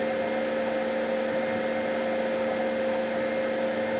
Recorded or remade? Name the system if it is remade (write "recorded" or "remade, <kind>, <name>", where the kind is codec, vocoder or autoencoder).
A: recorded